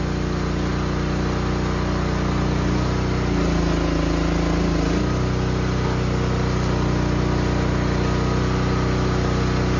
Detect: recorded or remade recorded